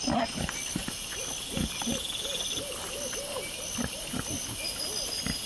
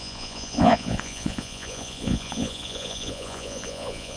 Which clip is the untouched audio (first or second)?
first